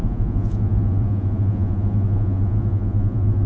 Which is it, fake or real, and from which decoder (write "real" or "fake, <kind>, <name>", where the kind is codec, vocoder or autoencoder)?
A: fake, vocoder, Vocos